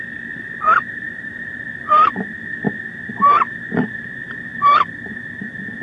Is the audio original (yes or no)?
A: no